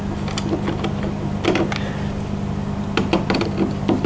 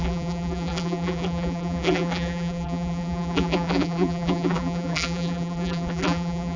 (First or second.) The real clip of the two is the first